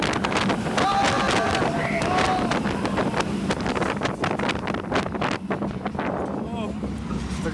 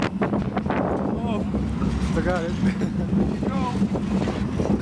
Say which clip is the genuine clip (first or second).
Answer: first